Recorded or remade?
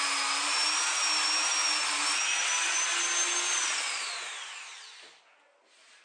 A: recorded